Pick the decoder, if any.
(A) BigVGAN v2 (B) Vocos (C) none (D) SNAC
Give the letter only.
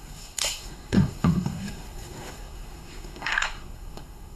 D